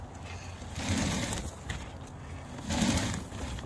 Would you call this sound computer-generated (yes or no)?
no